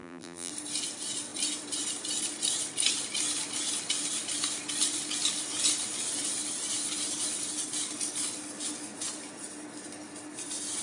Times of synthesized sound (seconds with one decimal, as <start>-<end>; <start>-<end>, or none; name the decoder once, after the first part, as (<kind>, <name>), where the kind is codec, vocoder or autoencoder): 0.0-0.5 (vocoder, BigVGAN v2)